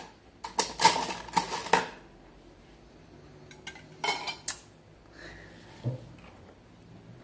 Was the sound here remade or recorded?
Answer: recorded